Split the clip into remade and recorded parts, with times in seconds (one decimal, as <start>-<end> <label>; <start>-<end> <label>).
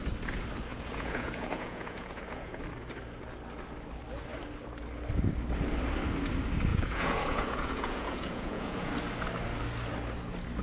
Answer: 0.0-0.7 recorded; 0.7-2.6 remade; 2.6-6.7 recorded; 6.7-8.9 remade; 8.9-10.6 recorded